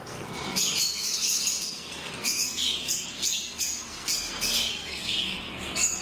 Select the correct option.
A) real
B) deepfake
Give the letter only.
B